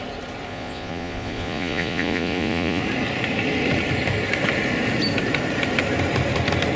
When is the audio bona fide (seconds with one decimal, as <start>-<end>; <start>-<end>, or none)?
0.0-0.5; 2.8-6.8